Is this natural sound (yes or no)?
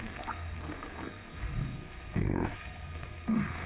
no